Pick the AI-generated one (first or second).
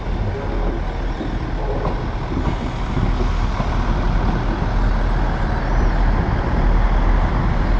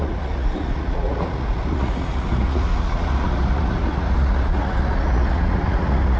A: second